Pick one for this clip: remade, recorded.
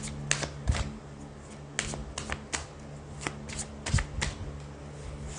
recorded